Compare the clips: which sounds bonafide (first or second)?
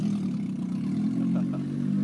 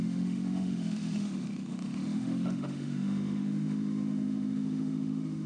first